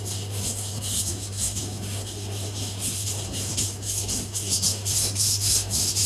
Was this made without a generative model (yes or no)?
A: no